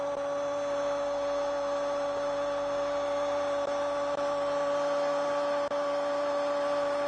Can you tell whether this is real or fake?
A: real